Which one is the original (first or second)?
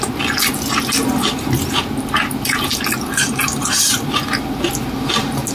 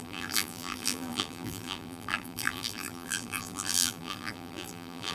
first